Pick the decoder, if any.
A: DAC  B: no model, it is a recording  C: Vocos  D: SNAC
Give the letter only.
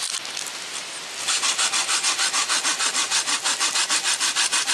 B